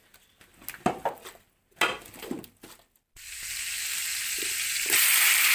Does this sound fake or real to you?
real